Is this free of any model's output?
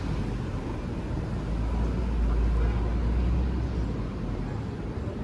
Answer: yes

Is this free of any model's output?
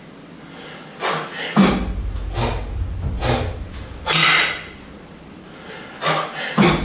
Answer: yes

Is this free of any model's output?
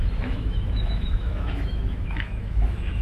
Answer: no